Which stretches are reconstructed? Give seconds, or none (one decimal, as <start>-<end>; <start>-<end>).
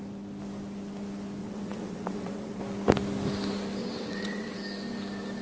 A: 1.4-2.6; 3.8-4.6